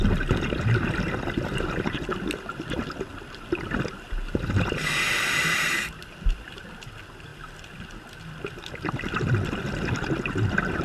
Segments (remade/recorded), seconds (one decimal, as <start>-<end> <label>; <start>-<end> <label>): 0.0-10.8 recorded